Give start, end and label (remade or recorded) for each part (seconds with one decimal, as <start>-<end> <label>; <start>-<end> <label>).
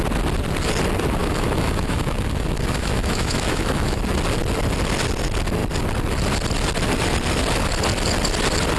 0.0-1.2 recorded; 1.2-4.0 remade; 4.0-8.8 recorded